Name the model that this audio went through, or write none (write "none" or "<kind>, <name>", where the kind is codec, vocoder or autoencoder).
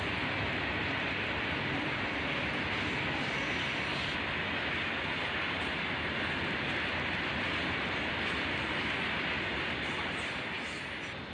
none